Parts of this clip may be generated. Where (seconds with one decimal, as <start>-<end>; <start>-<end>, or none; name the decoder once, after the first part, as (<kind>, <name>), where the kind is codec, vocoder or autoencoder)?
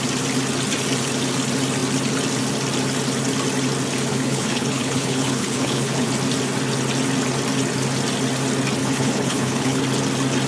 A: 4.1-6.1 (codec, HILCodec); 8.8-9.8